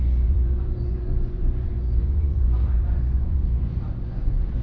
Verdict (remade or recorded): remade